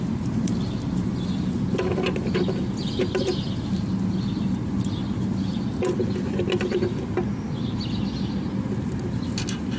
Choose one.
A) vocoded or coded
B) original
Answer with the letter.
B